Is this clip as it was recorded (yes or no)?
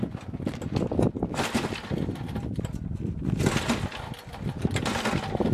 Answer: no